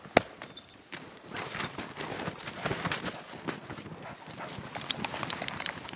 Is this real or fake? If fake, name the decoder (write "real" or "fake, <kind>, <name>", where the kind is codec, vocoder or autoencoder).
real